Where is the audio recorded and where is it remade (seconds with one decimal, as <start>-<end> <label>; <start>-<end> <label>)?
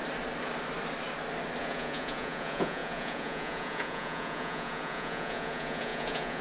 0.0-1.6 recorded; 1.6-6.4 remade